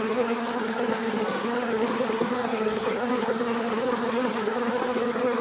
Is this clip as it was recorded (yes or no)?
no